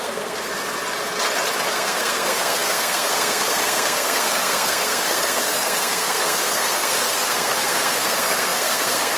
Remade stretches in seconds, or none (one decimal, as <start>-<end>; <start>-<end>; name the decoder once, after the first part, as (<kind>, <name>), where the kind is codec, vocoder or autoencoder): 0.0-0.5 (codec, SNAC); 1.7-9.2